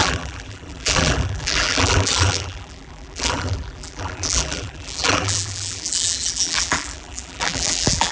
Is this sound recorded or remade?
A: remade